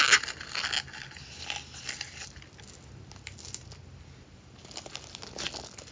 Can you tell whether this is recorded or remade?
recorded